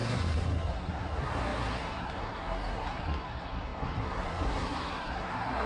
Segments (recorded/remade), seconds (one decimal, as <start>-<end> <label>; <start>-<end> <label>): 0.0-5.7 remade